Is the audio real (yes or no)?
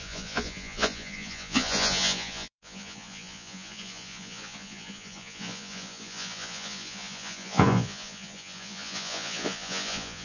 no